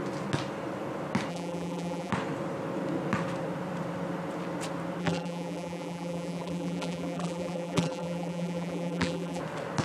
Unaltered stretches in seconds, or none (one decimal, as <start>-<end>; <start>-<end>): 0.0-1.3; 2.1-5.0; 9.4-9.8